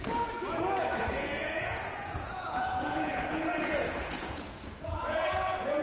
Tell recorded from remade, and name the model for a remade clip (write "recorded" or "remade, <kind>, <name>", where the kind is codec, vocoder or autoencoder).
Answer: remade, vocoder, Vocos